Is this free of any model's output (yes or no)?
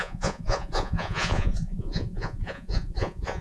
no